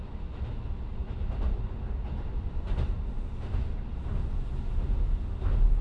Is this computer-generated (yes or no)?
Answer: no